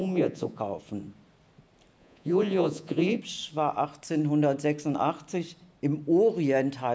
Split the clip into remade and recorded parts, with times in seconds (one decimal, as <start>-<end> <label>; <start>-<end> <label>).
0.0-0.6 remade; 0.6-2.0 recorded; 2.0-3.2 remade; 3.2-6.9 recorded